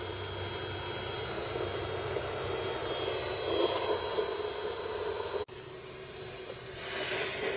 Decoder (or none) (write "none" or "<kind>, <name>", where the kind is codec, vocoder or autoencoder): none